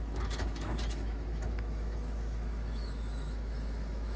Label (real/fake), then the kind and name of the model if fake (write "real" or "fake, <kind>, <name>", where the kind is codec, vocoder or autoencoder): fake, autoencoder, DAC-VAE